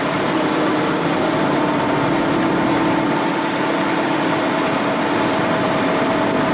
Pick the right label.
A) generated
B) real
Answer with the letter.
A